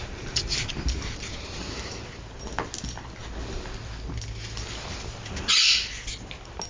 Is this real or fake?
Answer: real